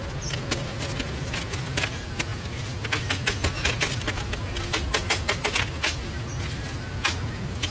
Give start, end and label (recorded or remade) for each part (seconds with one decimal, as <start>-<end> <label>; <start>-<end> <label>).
0.0-7.7 recorded